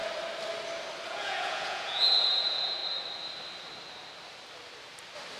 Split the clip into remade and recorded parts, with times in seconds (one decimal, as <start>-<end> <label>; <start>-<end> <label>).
0.0-1.1 recorded; 1.1-2.8 remade; 2.8-5.4 recorded